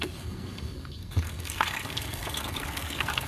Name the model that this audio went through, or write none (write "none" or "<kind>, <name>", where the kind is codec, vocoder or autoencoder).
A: codec, SNAC